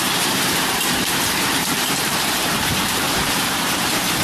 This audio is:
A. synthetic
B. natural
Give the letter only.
A